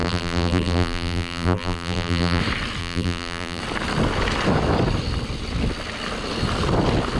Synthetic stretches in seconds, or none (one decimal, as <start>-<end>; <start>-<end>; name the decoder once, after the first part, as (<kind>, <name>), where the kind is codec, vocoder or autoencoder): 0.0-2.4 (vocoder, BigVGAN v2); 2.8-3.6